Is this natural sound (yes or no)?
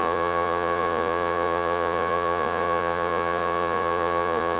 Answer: no